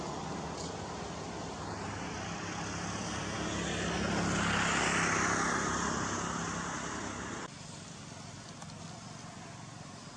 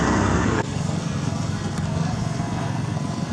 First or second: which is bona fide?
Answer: first